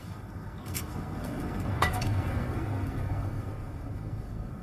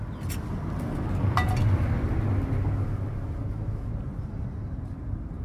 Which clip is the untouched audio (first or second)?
second